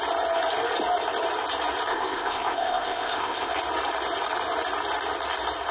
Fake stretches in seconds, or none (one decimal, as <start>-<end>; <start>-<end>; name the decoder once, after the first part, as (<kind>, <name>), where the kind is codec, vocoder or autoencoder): 1.9-3.5 (codec, ZipCodec)